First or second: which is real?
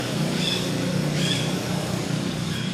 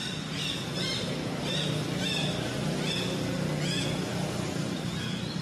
second